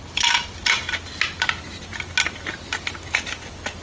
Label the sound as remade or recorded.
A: recorded